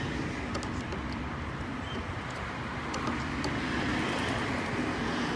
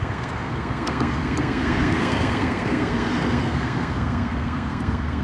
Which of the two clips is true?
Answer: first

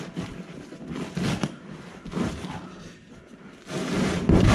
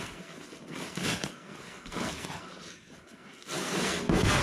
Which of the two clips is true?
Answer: first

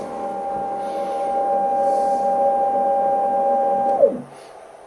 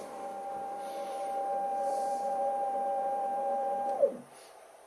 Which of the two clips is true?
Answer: first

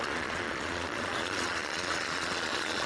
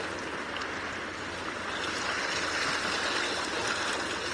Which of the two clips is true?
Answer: second